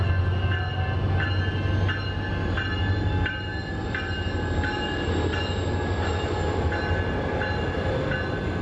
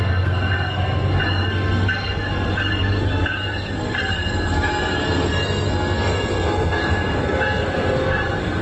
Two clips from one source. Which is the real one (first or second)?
first